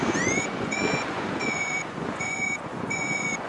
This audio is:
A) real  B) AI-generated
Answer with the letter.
B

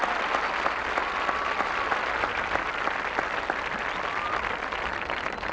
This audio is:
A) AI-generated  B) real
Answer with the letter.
B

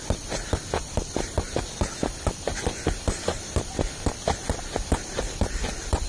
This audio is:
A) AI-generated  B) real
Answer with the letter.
B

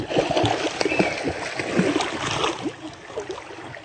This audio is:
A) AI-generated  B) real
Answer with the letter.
B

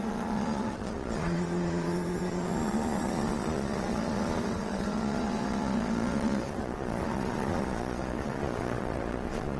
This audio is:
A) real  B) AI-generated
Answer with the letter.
B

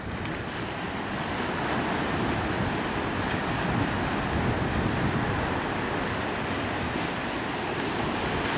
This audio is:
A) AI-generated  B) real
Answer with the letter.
B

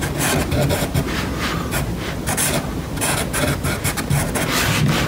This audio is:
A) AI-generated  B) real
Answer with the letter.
B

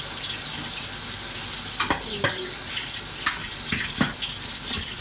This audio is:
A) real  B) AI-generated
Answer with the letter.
A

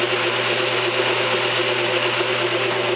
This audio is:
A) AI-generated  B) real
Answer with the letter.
B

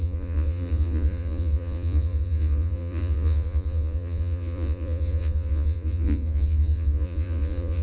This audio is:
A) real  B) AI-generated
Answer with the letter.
B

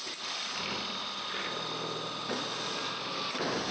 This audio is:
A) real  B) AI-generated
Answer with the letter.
A